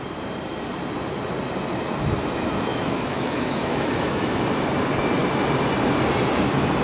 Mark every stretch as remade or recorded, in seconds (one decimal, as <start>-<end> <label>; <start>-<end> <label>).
0.0-2.7 recorded; 2.7-4.4 remade; 4.4-6.8 recorded